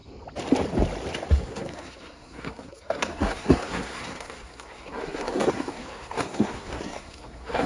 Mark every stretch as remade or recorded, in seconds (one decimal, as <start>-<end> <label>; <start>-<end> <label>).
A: 0.0-1.3 recorded; 1.3-7.7 remade